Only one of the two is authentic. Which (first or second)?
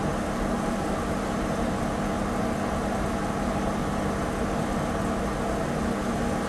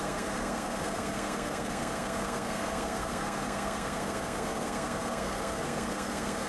first